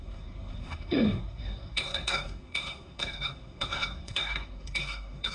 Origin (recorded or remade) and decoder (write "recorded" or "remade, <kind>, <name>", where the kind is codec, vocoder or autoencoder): remade, codec, SNAC